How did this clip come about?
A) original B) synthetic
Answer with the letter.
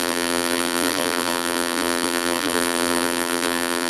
B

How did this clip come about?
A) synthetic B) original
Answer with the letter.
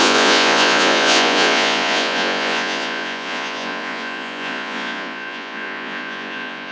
A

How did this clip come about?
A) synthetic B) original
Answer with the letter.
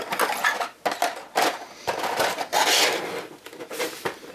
B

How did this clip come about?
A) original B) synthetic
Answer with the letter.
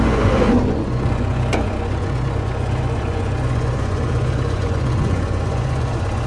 B